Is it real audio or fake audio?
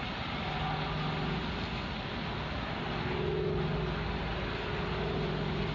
real